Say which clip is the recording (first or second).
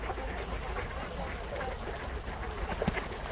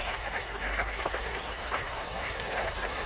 first